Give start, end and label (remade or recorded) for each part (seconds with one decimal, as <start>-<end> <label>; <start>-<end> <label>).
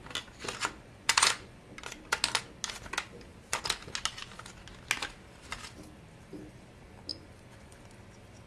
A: 0.0-0.6 recorded; 0.6-1.6 remade; 1.6-7.1 recorded; 7.1-7.8 remade; 7.8-8.5 recorded